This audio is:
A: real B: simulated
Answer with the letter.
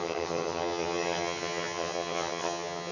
B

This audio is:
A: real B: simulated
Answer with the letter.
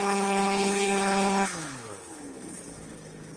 B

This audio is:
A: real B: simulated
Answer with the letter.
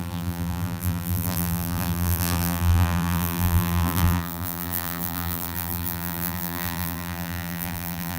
B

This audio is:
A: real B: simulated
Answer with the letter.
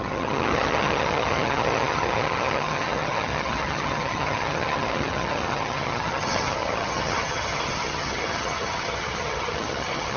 B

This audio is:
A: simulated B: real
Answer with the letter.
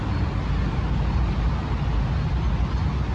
B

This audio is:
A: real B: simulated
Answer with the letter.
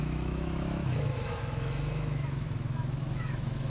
B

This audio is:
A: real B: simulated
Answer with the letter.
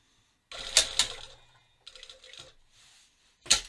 A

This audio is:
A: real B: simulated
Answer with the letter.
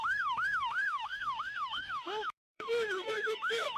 B